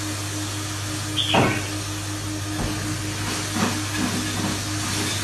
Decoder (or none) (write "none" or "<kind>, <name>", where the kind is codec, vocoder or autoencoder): none